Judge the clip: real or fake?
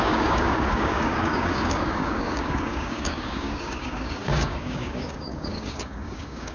fake